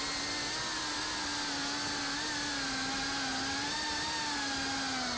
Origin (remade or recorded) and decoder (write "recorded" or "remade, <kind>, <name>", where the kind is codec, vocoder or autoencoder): recorded